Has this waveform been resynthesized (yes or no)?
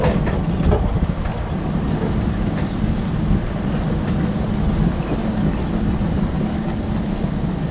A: no